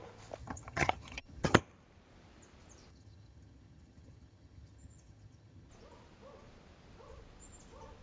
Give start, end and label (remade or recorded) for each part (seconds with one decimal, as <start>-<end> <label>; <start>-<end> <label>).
0.0-0.4 recorded; 0.4-1.6 remade; 1.6-2.9 recorded; 2.9-5.7 remade; 5.7-8.0 recorded